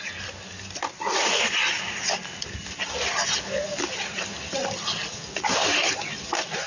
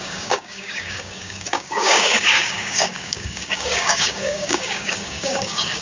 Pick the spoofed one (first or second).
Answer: second